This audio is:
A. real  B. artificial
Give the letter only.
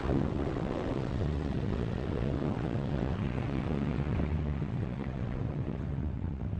B